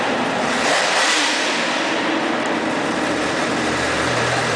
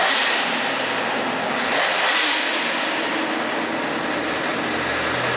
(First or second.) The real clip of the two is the second